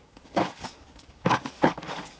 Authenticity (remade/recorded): remade